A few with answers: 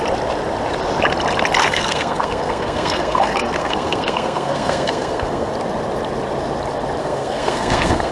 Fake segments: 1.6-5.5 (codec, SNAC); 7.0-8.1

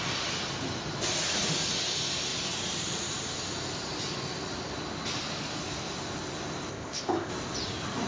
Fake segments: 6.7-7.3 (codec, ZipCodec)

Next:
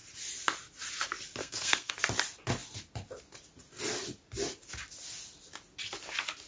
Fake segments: 1.4-1.9 (codec, SNAC)

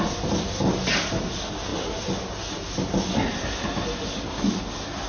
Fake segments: none

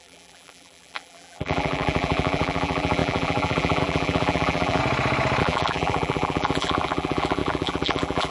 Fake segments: 0.0-4.8 (vocoder, BigVGAN v2); 5.4-8.3